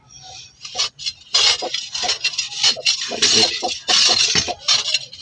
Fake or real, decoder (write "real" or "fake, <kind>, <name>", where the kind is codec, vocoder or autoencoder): real